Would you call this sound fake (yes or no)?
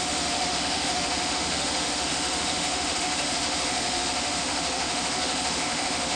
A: yes